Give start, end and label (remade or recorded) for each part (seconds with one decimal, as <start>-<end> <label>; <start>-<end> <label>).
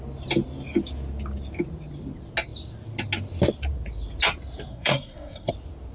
0.0-4.7 recorded; 4.7-5.5 remade; 5.5-5.9 recorded